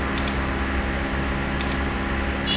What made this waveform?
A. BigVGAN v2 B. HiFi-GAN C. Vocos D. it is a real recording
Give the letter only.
D